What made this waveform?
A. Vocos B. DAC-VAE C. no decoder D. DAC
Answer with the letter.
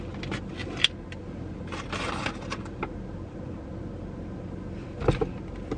C